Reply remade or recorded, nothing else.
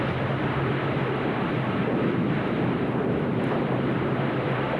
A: recorded